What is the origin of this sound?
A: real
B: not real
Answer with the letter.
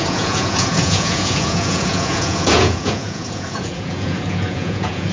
B